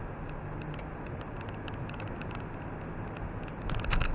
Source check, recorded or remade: recorded